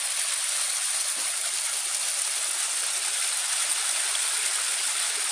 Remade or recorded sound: recorded